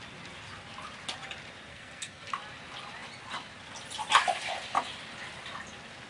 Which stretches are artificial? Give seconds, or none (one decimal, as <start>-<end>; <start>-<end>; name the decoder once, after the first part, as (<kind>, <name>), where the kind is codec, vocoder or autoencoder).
1.7-2.3 (codec, SNAC)

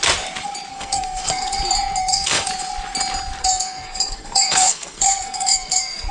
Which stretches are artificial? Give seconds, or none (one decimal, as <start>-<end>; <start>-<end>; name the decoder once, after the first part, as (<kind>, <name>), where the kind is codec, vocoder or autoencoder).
0.7-1.6 (codec, SNAC); 2.0-2.5; 3.4-6.1